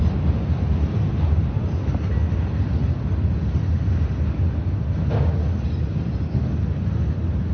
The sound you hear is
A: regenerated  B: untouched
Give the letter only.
B